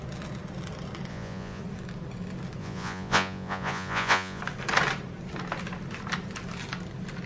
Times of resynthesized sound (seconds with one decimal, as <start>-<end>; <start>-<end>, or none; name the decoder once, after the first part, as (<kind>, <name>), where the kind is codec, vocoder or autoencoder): 1.1-1.6 (vocoder, Vocos); 2.6-4.4